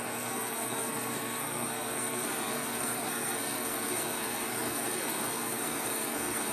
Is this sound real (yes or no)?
no